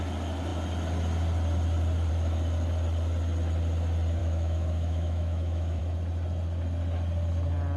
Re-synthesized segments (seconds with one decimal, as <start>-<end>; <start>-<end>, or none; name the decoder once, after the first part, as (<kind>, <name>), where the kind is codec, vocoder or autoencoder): 4.2-5.8 (autoencoder, DAC-VAE)